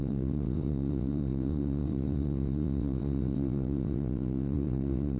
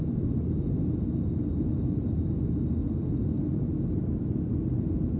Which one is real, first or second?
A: second